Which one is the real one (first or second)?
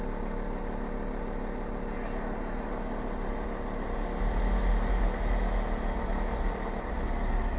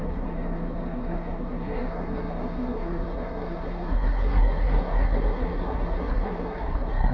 first